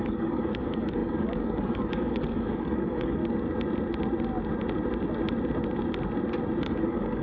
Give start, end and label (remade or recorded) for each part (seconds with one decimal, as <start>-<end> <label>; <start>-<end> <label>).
0.0-3.2 remade; 3.2-6.6 recorded; 6.6-7.2 remade